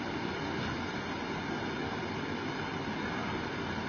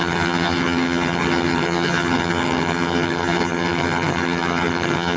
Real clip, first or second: first